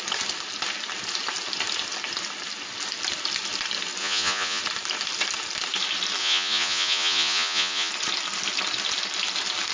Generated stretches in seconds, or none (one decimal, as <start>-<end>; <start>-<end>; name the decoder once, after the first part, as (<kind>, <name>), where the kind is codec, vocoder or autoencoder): 4.0-4.6 (vocoder, Vocos); 6.2-7.9

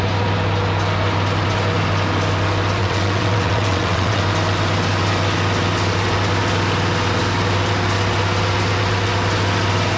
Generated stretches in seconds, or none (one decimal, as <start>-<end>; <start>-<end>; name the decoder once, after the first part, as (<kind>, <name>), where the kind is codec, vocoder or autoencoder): 2.8-4.2 (vocoder, WaveNeXt)

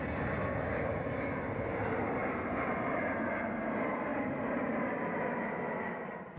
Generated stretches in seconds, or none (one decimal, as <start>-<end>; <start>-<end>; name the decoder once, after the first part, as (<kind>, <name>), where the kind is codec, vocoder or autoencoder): 1.7-2.8 (vocoder, BigVGAN v2); 4.1-4.9